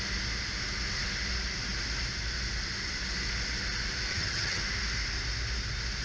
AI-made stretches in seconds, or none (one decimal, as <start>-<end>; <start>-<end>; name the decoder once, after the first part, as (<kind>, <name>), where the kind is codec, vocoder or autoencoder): 4.1-4.6 (vocoder, HiFi-GAN)